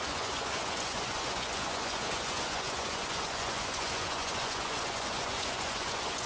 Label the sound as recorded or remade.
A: remade